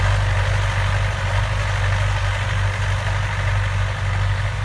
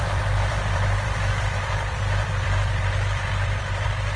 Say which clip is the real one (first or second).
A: first